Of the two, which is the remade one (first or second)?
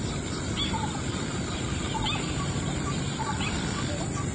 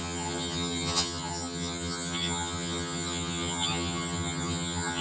second